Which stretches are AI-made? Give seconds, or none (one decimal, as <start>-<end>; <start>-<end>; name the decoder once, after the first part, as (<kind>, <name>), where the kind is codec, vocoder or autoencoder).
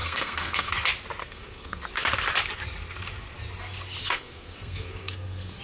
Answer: 0.0-0.7 (codec, SNAC); 1.2-1.8; 4.0-5.6